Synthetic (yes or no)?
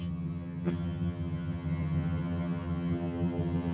yes